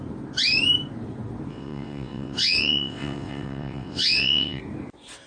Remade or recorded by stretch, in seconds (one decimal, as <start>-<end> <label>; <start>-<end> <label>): 0.0-1.5 recorded; 1.5-4.6 remade; 4.6-5.3 recorded